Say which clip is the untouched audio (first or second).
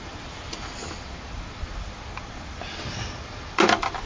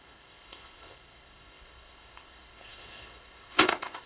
first